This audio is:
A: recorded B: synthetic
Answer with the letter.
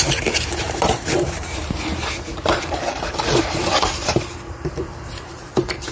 B